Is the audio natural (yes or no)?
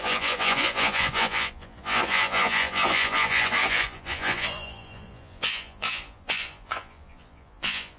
no